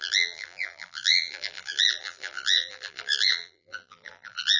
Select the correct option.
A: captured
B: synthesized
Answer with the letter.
B